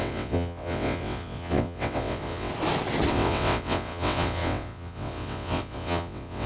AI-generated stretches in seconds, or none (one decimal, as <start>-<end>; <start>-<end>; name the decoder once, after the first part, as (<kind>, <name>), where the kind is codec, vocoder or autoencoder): 0.0-2.5 (vocoder, WaveNeXt); 3.1-6.5